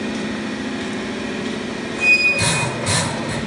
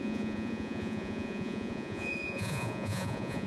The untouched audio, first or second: first